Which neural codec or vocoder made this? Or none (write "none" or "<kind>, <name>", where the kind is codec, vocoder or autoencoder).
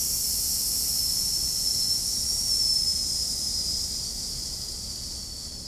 none